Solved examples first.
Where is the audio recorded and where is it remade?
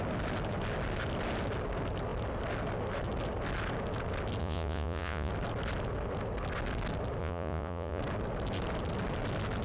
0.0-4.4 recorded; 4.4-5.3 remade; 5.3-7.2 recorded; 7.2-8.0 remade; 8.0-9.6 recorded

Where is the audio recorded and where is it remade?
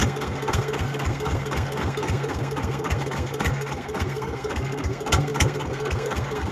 0.0-6.5 remade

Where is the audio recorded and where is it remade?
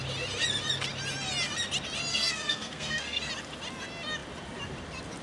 0.0-2.1 recorded; 2.1-3.3 remade; 3.3-5.2 recorded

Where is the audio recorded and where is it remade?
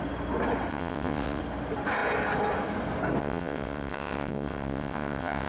0.0-0.7 recorded; 0.7-1.4 remade; 1.4-3.2 recorded; 3.2-5.5 remade